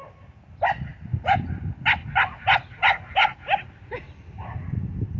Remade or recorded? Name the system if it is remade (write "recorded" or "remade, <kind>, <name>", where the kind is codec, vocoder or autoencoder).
recorded